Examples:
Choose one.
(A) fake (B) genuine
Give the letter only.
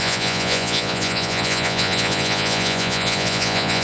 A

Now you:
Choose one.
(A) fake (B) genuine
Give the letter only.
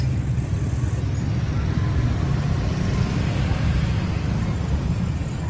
B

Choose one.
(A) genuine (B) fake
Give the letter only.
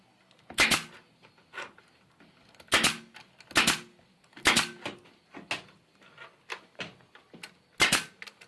A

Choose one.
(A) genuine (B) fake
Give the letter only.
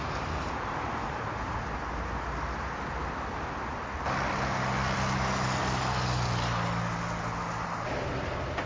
A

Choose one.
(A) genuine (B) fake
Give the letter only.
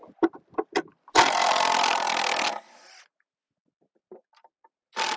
A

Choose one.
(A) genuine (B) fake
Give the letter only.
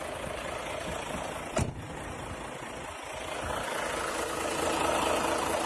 A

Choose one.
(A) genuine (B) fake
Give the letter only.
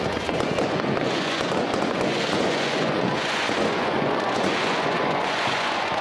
B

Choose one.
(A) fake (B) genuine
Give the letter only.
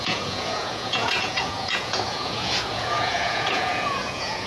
A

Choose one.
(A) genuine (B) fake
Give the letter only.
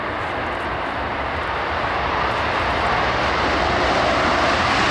A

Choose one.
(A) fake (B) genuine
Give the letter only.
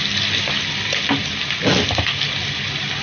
B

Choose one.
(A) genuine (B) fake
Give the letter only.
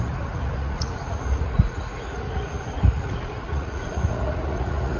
B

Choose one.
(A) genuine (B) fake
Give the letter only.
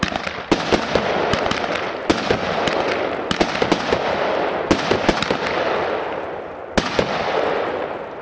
A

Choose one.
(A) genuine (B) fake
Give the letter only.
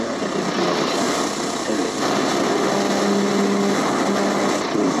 A